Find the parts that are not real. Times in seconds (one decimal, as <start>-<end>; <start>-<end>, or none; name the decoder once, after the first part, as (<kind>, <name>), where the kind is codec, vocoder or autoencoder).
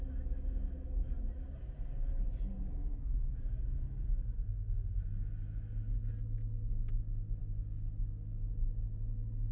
2.8-3.6 (codec, DAC)